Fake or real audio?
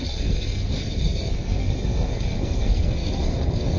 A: fake